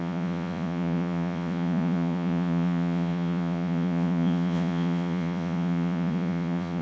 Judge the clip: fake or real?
fake